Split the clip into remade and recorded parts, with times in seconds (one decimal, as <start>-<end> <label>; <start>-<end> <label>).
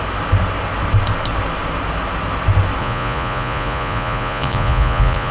0.0-2.8 recorded; 2.8-5.3 remade